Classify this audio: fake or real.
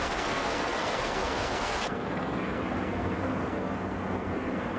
fake